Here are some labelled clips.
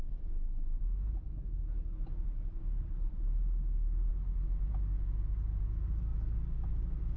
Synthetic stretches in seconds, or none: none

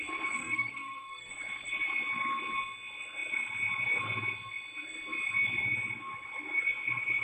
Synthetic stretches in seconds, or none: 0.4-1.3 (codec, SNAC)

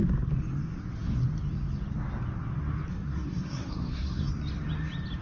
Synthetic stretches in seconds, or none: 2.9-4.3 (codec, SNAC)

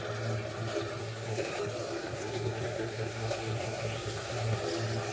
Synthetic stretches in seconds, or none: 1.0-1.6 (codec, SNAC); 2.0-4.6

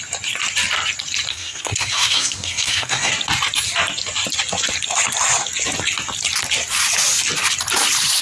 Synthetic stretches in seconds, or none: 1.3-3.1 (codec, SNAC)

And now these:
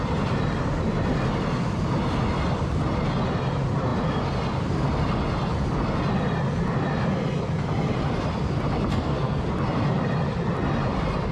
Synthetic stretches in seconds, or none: 8.9-9.4 (codec, SNAC)